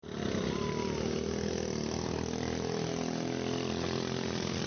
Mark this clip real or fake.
real